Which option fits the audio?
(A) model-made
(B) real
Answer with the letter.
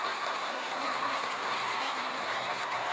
A